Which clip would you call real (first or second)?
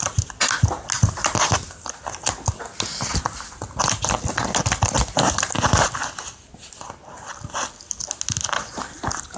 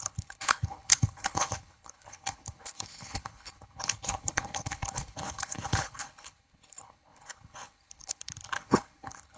first